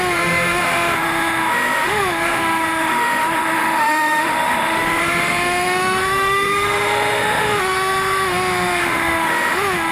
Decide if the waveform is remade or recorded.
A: remade